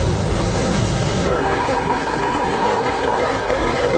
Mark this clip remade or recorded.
remade